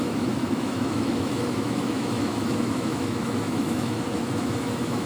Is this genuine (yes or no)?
no